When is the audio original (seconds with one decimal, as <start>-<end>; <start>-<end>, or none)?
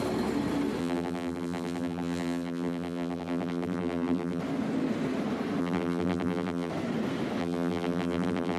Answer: 0.0-0.8; 4.4-5.6; 6.7-7.4